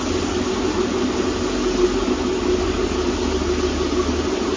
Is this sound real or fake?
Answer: real